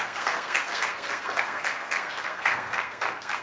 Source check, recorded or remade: remade